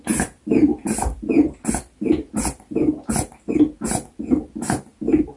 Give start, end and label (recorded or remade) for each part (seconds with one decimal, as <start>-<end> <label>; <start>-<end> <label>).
0.0-5.4 recorded